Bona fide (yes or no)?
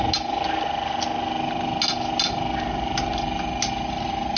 yes